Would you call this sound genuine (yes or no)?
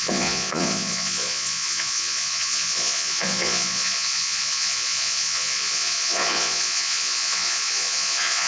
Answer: no